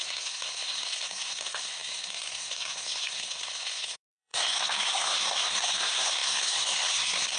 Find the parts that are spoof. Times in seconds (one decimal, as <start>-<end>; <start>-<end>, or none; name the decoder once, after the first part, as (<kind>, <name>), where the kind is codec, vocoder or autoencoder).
0.0-7.4 (codec, SNAC)